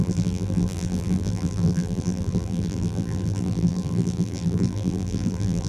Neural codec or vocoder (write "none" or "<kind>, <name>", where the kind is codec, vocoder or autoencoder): vocoder, BigVGAN v2